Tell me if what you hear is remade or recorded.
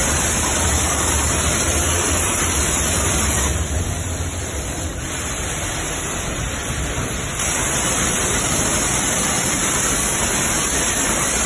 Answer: remade